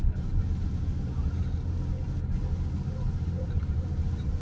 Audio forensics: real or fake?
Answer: real